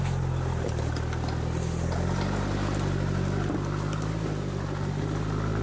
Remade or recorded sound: recorded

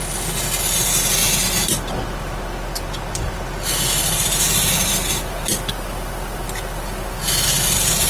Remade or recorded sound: recorded